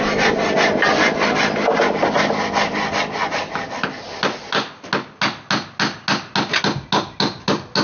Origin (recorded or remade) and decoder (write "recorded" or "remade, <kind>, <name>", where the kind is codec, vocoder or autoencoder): recorded